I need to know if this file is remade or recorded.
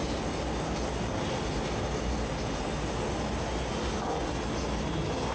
recorded